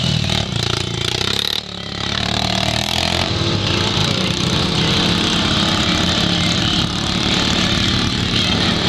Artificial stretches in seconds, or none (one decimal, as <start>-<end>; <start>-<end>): 0.0-8.9